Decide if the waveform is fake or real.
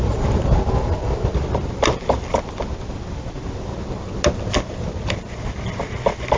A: real